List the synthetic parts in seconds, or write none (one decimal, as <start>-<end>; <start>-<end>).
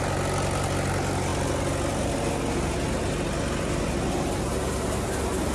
none